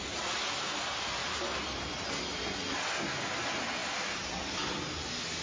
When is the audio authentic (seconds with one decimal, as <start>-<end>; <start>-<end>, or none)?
0.0-1.2; 2.1-3.8; 4.4-5.4